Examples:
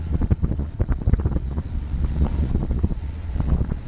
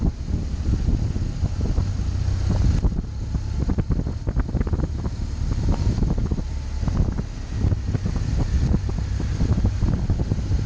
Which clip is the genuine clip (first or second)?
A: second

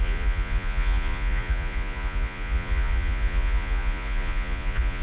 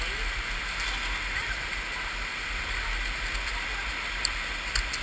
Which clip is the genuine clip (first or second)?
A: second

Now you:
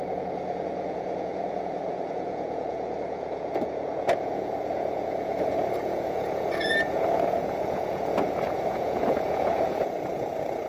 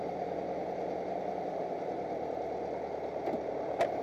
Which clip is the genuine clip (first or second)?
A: second